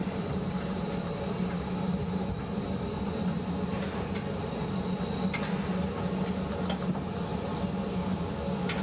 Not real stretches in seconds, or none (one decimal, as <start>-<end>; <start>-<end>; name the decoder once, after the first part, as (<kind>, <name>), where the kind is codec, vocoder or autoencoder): 0.0-5.0 (vocoder, BigVGAN v2); 7.3-8.2

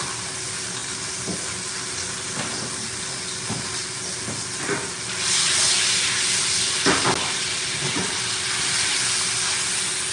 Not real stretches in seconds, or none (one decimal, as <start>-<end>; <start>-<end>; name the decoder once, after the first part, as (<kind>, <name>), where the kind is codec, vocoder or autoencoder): none

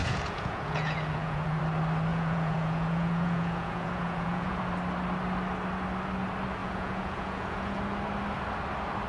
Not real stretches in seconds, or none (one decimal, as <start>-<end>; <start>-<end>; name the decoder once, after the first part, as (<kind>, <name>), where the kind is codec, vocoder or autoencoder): 0.0-1.6 (vocoder, Vocos); 2.1-4.6; 6.6-7.8

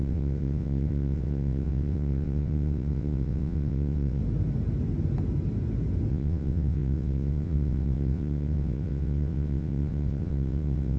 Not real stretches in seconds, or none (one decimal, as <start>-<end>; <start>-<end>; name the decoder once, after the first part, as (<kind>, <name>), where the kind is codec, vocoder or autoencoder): 0.0-4.2 (vocoder, WaveNeXt); 6.1-11.0

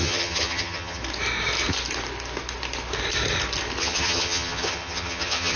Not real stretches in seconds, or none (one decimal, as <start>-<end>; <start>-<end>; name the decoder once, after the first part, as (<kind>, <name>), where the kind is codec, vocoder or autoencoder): 0.0-1.0 (vocoder, HiFi-GAN); 3.8-5.6

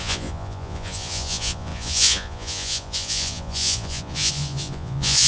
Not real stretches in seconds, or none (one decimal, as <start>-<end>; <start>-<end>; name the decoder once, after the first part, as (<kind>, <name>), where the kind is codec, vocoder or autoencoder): 0.0-5.3 (vocoder, Vocos)

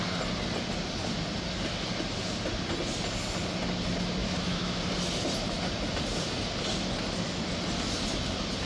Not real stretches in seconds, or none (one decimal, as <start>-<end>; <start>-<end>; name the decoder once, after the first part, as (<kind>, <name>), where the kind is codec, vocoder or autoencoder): 4.2-4.8 (autoencoder, DAC-VAE)

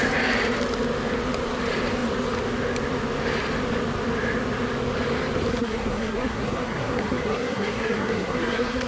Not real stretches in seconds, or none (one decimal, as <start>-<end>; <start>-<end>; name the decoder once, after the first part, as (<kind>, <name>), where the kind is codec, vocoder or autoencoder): 5.5-8.9 (codec, SNAC)